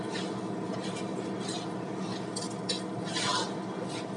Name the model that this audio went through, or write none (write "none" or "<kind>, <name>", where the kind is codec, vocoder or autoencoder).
none